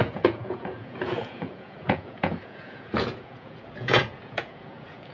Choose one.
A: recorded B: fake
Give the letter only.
B